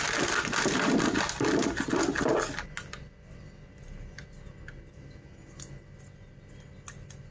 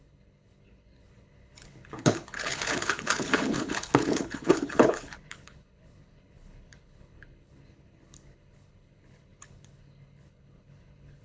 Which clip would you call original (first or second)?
first